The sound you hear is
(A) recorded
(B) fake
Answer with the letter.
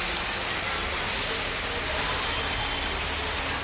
A